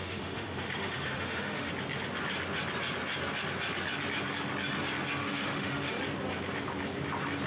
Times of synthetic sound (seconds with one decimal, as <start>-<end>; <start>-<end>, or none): 0.0-1.7; 5.2-6.0

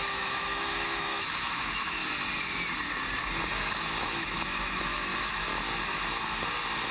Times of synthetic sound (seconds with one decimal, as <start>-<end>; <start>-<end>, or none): 0.0-2.0; 3.5-5.5

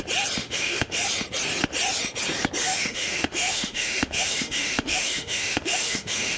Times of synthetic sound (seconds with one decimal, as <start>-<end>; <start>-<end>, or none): 0.4-1.0; 2.6-6.4

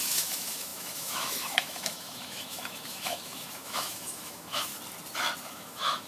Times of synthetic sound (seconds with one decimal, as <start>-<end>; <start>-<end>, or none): 0.0-4.7; 5.4-6.1

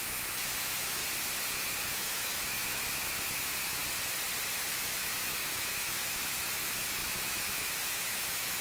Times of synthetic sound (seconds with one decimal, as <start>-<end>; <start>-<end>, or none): 0.0-1.0; 1.5-3.8; 4.7-8.6

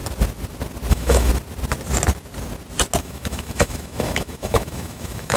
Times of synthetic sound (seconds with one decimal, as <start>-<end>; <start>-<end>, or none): 0.9-1.3; 3.0-5.4

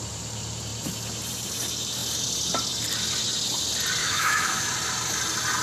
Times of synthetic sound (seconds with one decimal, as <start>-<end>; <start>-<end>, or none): 4.0-4.7

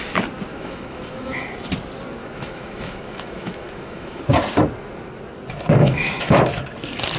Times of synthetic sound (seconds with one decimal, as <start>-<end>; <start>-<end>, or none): 0.5-1.4; 2.2-4.2; 5.8-6.3